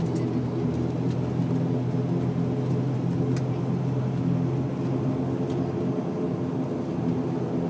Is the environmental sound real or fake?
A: real